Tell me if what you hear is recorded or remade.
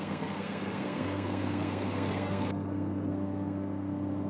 remade